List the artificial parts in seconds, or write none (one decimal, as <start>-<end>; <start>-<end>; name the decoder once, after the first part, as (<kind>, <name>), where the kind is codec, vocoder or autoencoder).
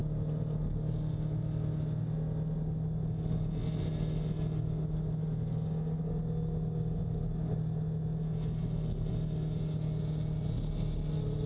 none